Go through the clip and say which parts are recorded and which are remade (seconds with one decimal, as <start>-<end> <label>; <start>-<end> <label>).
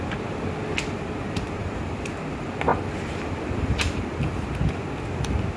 0.0-1.6 recorded; 1.6-2.2 remade; 2.2-2.7 recorded; 2.7-4.5 remade; 4.5-5.6 recorded